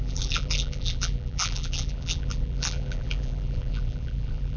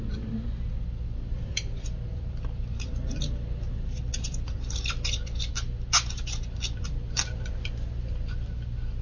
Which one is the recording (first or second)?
second